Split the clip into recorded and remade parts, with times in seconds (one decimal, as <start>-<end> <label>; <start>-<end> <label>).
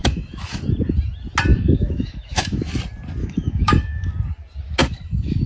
0.0-0.6 remade; 0.6-1.5 recorded; 1.5-2.7 remade; 2.7-3.2 recorded; 3.2-4.1 remade; 4.1-4.8 recorded; 4.8-5.5 remade